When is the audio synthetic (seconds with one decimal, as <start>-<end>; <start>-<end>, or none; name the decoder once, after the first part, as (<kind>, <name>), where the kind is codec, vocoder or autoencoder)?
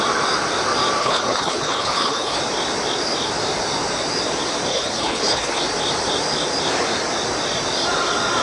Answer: 1.0-2.4 (codec, HILCodec); 4.7-5.6